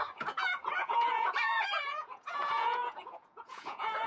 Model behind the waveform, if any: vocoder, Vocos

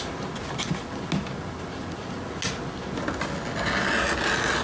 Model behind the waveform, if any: none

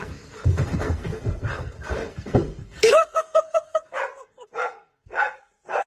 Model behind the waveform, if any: codec, SNAC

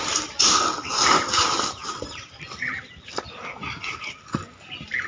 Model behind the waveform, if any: none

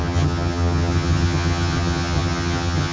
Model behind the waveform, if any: vocoder, HiFi-GAN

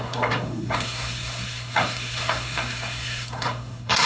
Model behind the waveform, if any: codec, SNAC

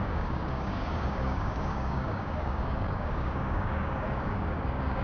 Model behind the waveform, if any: codec, DAC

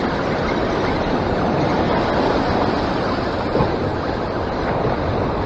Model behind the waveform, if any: none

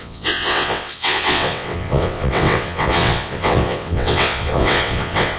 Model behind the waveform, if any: vocoder, WaveNeXt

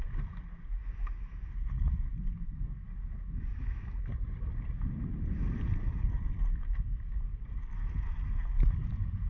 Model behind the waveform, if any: none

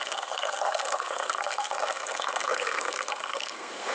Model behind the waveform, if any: codec, SNAC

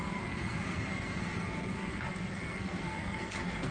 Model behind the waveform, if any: codec, SNAC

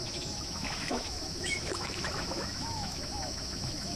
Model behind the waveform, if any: autoencoder, DAC-VAE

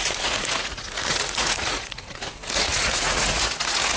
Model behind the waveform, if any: vocoder, Vocos